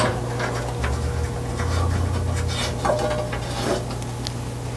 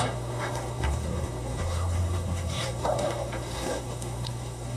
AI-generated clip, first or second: second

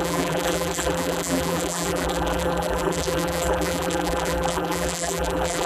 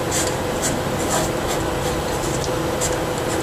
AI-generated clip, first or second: first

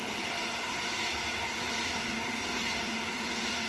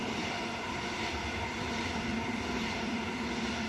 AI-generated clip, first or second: second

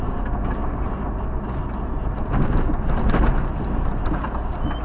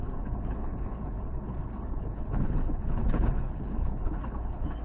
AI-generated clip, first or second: second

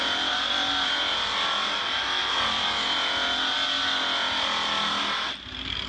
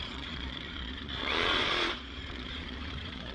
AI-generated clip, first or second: second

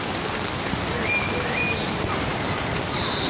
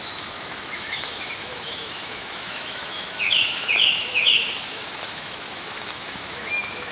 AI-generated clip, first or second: second